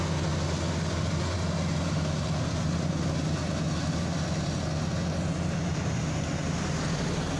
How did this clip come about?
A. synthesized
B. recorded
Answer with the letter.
B